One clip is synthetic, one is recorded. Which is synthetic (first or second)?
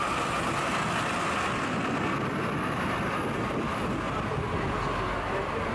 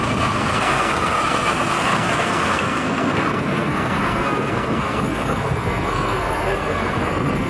second